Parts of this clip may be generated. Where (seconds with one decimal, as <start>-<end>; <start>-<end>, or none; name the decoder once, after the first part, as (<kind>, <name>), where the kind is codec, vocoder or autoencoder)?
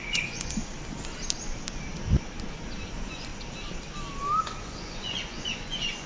0.0-0.6 (vocoder, Vocos); 2.9-3.3; 4.4-6.1